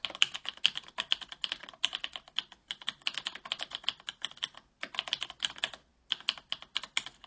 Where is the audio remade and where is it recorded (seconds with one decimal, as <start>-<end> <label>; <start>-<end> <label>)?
0.0-7.3 recorded